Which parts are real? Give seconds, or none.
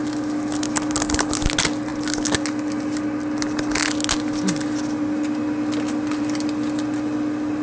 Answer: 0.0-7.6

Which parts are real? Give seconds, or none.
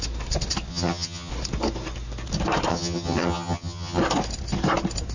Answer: 0.0-0.7; 1.3-2.7; 4.0-5.1